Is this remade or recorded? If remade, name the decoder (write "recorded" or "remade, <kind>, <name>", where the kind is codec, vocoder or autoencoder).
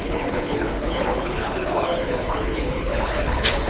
remade, codec, HILCodec